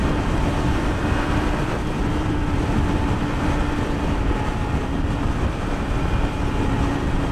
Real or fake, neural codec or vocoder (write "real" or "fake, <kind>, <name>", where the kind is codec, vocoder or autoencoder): fake, vocoder, BigVGAN v2